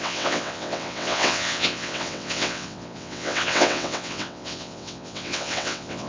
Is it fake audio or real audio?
fake